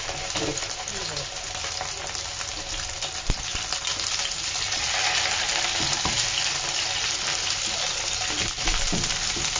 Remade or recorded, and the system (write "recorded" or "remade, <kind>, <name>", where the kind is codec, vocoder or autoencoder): recorded